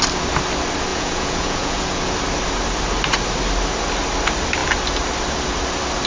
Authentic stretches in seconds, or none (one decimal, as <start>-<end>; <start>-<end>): 0.0-0.9; 2.1-6.1

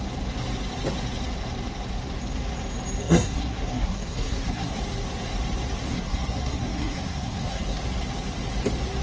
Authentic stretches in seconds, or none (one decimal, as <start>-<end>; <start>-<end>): 0.0-3.0; 4.8-5.9; 7.8-9.0